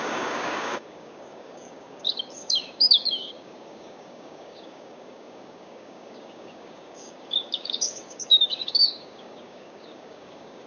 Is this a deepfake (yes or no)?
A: yes